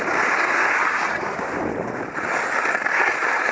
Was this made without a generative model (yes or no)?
yes